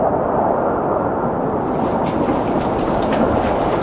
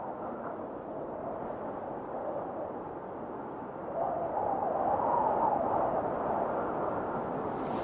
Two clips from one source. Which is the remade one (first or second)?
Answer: first